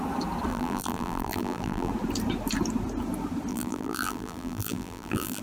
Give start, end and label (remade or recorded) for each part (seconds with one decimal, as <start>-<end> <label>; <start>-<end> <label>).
0.0-0.5 recorded; 0.5-1.9 remade; 1.9-3.5 recorded; 3.5-5.4 remade